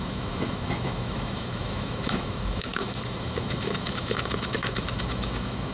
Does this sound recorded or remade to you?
remade